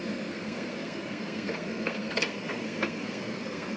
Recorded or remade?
remade